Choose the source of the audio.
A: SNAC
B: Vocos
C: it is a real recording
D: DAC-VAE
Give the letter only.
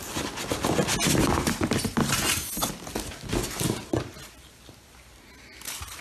C